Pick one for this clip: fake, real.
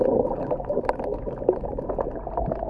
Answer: real